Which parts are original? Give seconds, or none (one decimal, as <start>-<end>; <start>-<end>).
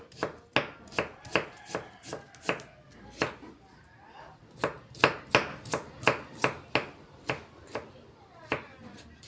0.0-9.3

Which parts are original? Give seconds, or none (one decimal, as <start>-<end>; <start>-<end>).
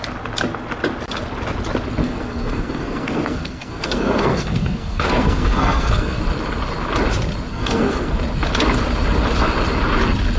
0.0-2.0; 6.2-7.5; 8.2-10.4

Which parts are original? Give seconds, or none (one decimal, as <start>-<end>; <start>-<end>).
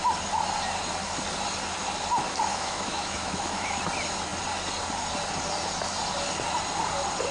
0.0-2.5; 3.8-7.3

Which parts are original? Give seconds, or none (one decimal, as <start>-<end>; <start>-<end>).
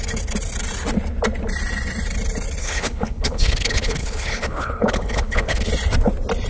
0.0-2.6; 5.7-6.5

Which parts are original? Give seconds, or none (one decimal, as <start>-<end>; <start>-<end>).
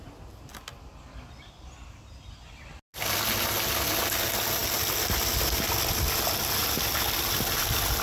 0.0-8.0